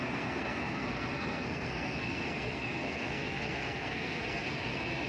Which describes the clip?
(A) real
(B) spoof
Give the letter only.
B